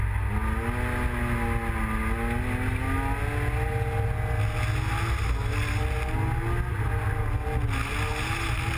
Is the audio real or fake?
real